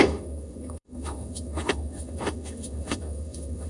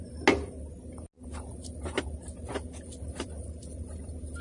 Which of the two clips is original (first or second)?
second